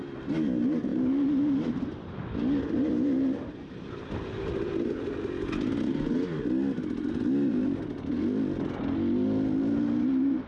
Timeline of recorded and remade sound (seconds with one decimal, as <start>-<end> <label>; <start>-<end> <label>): 0.0-10.5 recorded

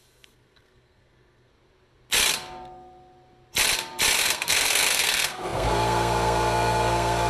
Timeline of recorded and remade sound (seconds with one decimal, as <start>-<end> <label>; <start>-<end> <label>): 0.0-1.5 remade; 1.5-4.2 recorded; 4.2-7.3 remade

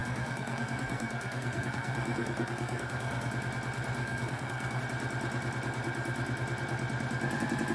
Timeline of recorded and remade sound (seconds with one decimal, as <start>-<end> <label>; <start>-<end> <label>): 0.0-3.3 remade; 3.3-4.0 recorded; 4.0-4.8 remade; 4.8-7.7 recorded

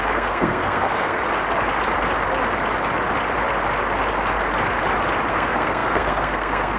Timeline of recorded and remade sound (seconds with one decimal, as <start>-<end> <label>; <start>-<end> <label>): 0.0-1.2 remade; 1.2-5.3 recorded; 5.3-6.8 remade